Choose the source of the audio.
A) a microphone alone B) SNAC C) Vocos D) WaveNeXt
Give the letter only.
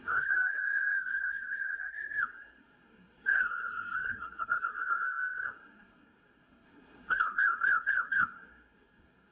B